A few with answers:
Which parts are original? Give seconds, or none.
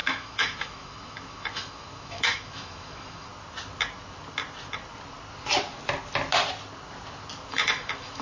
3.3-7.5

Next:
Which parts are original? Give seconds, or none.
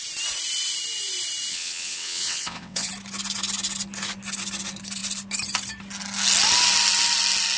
0.0-1.5; 2.9-7.6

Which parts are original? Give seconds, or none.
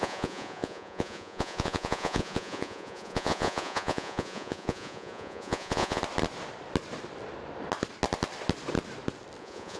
6.0-9.4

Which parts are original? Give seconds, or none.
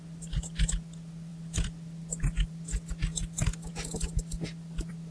0.0-5.1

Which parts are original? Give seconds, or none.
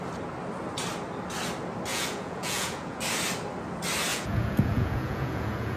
0.0-1.9; 3.0-4.1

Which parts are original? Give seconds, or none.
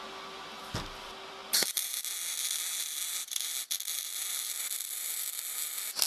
0.0-6.1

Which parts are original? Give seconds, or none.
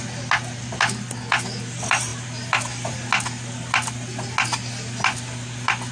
0.0-5.9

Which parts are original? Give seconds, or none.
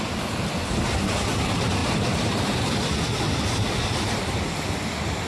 0.0-5.3